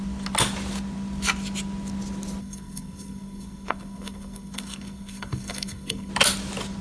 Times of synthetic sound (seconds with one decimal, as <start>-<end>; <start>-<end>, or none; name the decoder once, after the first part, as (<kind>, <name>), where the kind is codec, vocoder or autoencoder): 2.4-6.1 (codec, SNAC)